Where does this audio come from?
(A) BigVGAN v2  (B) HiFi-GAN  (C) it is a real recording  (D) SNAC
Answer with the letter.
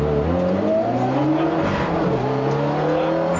C